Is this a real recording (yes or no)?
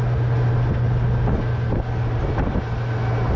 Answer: yes